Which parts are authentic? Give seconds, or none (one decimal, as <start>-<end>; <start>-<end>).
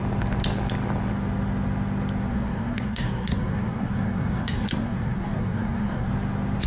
0.0-2.3; 6.1-6.7